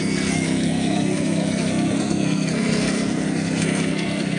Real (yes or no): no